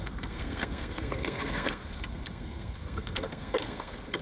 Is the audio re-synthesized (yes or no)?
yes